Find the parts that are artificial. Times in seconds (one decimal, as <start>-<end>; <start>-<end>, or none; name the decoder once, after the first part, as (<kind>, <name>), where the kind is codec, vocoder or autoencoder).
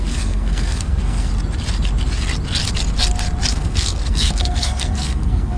0.0-1.3 (codec, SNAC); 3.5-5.6